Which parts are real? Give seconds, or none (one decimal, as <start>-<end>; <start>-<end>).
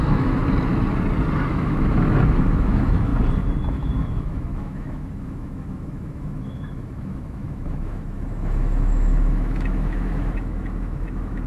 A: 0.4-1.5; 3.1-3.7